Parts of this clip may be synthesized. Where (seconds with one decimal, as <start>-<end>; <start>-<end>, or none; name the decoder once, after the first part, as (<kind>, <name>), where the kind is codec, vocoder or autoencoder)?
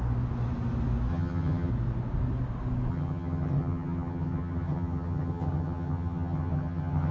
1.1-1.7 (vocoder, HiFi-GAN); 2.9-7.1